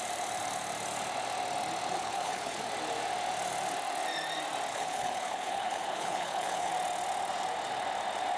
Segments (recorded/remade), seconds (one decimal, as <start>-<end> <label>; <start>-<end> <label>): 0.0-2.0 recorded; 2.0-2.6 remade; 2.6-4.7 recorded; 4.7-6.7 remade; 6.7-8.4 recorded